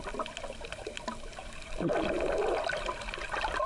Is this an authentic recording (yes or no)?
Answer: yes